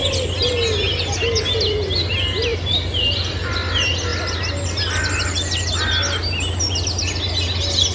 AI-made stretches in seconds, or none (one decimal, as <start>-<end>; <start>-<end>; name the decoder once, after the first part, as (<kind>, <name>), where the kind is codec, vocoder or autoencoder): 2.5-3.5 (vocoder, BigVGAN v2); 4.1-7.1